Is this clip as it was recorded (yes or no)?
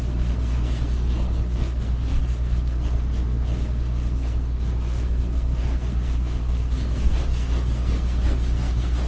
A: no